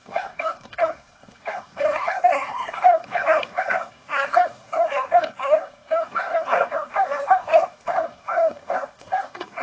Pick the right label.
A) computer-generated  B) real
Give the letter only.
A